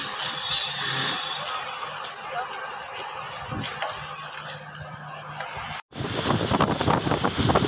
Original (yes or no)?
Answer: yes